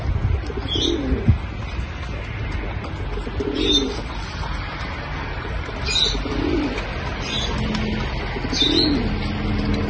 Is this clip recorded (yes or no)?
yes